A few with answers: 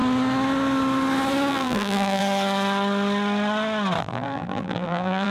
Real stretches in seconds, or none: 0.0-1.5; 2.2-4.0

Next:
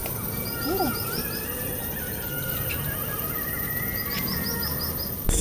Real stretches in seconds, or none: 3.2-5.4

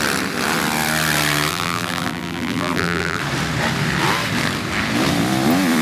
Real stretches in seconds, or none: 0.0-1.5; 3.2-5.8

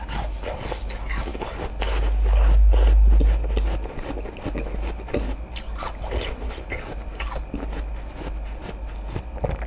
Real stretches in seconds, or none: 0.0-9.7